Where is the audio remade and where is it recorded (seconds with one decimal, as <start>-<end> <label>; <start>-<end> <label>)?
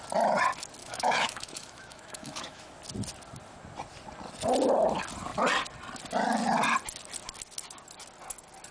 0.0-0.8 recorded; 0.8-2.7 remade; 2.7-8.7 recorded